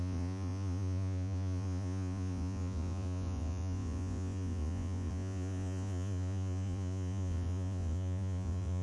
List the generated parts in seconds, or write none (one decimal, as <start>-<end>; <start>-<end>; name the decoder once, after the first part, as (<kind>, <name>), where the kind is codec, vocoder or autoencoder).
0.0-8.8 (vocoder, Vocos)